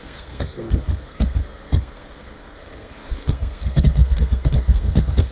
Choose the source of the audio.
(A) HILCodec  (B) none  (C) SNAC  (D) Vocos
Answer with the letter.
C